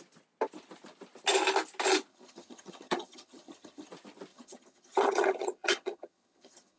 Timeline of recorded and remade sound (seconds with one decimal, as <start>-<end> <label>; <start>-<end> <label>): 0.0-2.1 recorded; 2.1-3.9 remade; 3.9-4.3 recorded; 4.3-6.8 remade